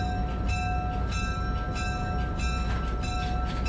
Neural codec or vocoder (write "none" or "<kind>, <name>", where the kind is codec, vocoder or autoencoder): none